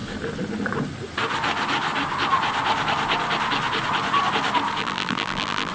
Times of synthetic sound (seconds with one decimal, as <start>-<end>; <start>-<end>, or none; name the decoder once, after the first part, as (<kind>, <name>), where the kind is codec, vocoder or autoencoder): 4.8-5.7 (vocoder, BigVGAN v2)